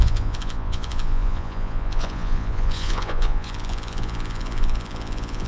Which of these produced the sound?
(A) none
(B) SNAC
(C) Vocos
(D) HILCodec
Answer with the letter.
C